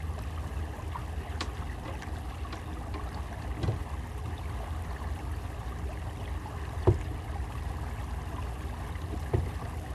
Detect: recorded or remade recorded